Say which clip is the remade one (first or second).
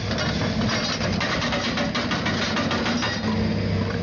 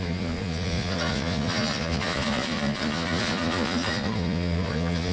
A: second